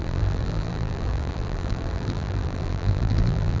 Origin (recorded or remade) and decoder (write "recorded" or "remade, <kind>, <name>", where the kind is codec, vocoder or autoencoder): remade, vocoder, BigVGAN v2